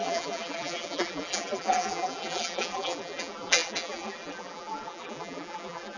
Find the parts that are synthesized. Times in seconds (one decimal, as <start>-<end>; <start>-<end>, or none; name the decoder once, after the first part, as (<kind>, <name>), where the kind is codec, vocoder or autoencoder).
0.0-6.0 (vocoder, BigVGAN v2)